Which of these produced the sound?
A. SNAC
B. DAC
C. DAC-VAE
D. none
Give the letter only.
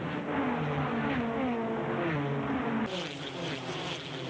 D